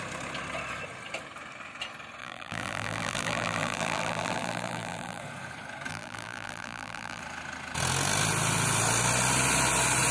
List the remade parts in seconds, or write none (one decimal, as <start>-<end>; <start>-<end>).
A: 2.2-5.2; 5.9-7.2